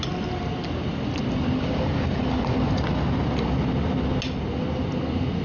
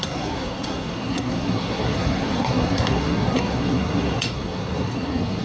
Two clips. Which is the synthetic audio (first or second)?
second